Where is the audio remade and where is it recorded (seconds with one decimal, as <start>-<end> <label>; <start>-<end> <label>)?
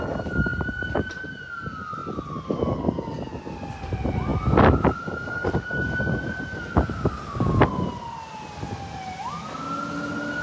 0.0-0.5 recorded; 0.5-1.1 remade; 1.1-10.4 recorded